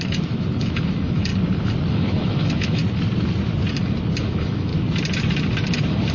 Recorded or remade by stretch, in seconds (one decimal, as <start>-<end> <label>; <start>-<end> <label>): 0.0-1.3 remade; 1.3-1.9 recorded; 1.9-2.8 remade; 2.8-4.2 recorded; 4.2-4.7 remade; 4.7-6.1 recorded